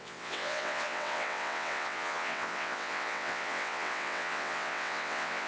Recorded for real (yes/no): no